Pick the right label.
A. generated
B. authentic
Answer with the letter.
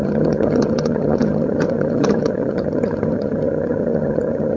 A